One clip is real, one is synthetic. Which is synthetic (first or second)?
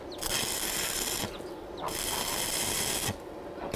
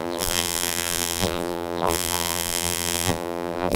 second